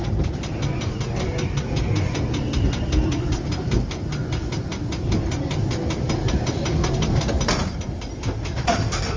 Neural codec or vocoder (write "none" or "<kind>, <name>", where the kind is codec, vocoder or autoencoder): none